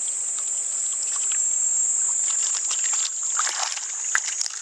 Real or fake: real